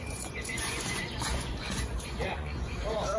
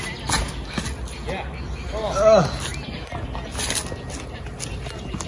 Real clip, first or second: second